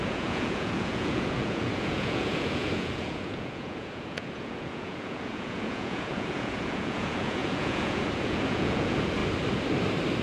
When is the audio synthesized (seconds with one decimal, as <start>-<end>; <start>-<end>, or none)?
0.0-9.2